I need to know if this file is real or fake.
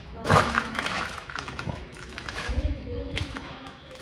fake